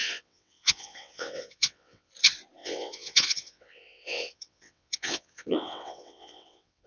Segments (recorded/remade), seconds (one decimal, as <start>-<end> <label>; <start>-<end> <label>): 0.0-2.1 remade; 2.1-2.6 recorded; 2.6-6.9 remade